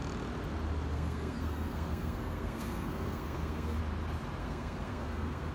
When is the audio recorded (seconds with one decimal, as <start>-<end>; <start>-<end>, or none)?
0.0-0.9; 3.8-4.4